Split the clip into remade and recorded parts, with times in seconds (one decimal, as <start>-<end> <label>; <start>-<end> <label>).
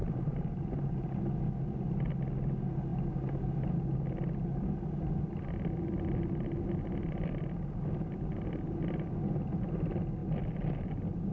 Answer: 0.0-1.2 remade; 1.2-11.3 recorded